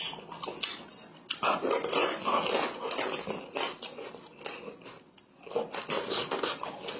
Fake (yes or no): no